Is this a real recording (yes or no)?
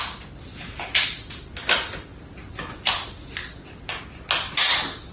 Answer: yes